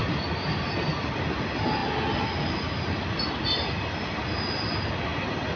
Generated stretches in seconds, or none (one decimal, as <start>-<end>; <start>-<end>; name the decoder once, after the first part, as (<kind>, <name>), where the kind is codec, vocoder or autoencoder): none